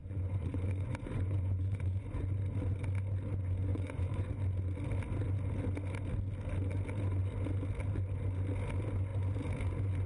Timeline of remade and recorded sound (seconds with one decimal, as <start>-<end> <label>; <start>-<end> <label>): 0.0-2.2 remade; 2.2-3.7 recorded; 3.7-4.3 remade; 4.3-10.1 recorded